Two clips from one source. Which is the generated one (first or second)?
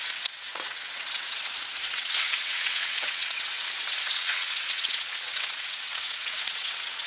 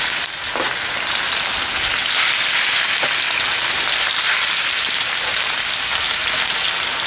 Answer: first